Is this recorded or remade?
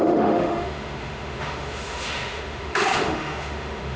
remade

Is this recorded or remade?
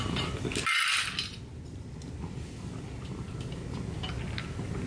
recorded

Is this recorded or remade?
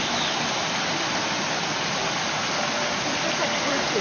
recorded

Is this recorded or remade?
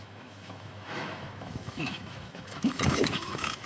remade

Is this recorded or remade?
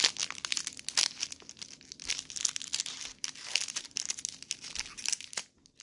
recorded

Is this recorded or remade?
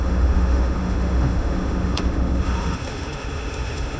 remade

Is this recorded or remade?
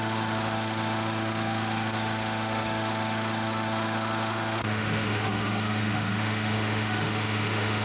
remade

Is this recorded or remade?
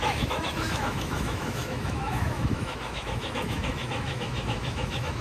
remade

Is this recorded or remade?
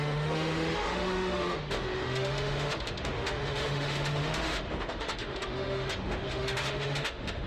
remade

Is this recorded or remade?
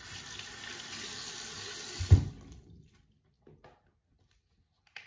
recorded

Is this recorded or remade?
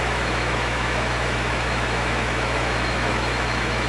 remade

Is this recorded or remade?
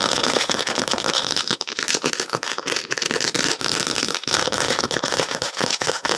remade